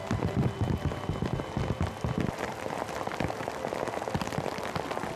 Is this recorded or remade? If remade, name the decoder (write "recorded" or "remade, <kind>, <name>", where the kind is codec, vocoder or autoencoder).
recorded